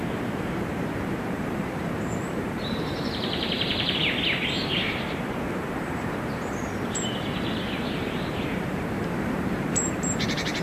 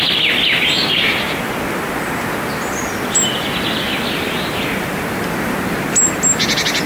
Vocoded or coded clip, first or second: first